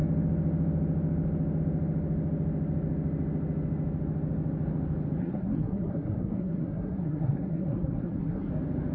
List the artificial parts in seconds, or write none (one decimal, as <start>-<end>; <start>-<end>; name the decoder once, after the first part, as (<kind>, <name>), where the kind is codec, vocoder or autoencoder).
5.2-8.5 (codec, SNAC)